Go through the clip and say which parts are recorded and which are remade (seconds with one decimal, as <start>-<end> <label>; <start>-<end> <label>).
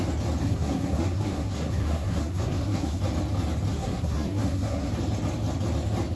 0.0-0.4 recorded; 0.4-3.0 remade; 3.0-3.7 recorded; 3.7-4.9 remade; 4.9-6.2 recorded